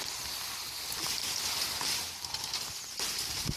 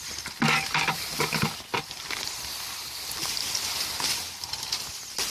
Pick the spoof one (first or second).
second